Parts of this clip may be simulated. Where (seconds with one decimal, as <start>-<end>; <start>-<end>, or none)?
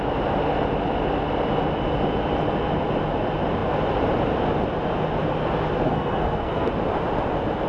5.8-6.7